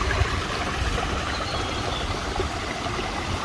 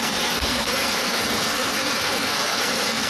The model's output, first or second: second